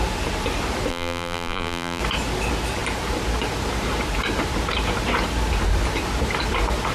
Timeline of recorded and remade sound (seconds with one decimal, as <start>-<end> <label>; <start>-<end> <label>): 0.0-0.9 recorded; 0.9-2.0 remade; 2.0-6.9 recorded